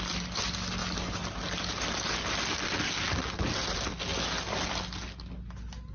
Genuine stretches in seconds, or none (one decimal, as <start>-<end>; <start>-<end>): 0.0-5.9